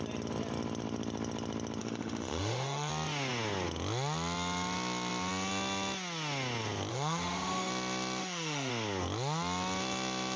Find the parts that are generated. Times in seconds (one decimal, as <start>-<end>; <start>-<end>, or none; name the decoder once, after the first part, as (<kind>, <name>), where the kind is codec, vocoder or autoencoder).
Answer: 1.8-2.9 (autoencoder, DAC-VAE); 6.9-7.7; 8.2-8.7